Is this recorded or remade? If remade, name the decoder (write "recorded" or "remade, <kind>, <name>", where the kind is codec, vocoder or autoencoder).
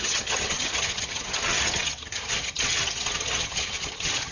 remade, vocoder, HiFi-GAN